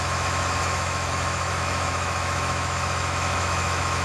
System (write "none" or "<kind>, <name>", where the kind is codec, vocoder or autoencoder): autoencoder, DAC-VAE